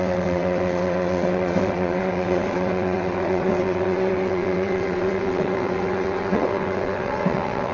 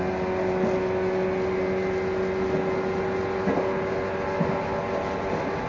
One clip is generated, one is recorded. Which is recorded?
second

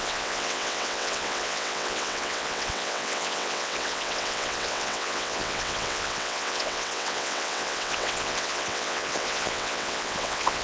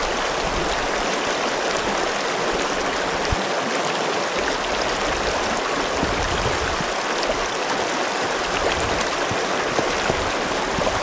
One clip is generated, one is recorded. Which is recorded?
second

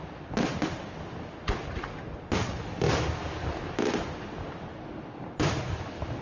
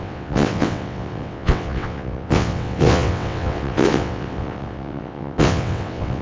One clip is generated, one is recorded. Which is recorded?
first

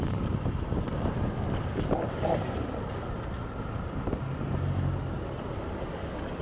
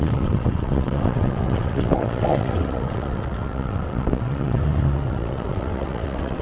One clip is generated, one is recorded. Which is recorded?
first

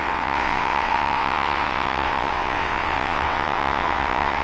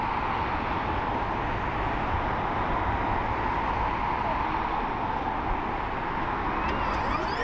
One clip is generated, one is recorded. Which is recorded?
second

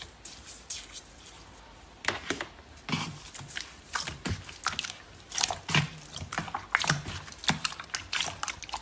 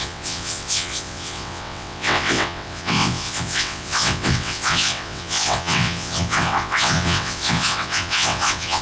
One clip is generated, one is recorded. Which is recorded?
first